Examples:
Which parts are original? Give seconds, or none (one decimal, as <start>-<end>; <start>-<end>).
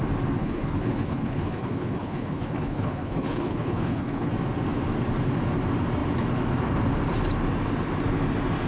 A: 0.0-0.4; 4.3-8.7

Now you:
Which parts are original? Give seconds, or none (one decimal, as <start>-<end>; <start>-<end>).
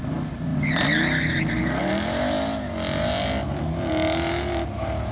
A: 0.0-5.1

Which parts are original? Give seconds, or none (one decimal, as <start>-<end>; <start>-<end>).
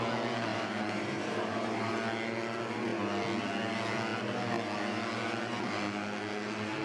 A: 0.0-0.5; 1.9-6.8